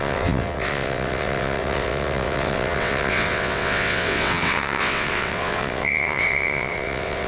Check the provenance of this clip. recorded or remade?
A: remade